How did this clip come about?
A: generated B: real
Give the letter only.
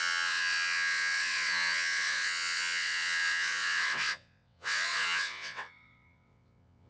A